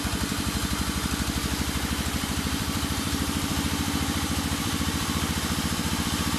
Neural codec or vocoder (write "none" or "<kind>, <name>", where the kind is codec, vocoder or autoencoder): vocoder, BigVGAN v2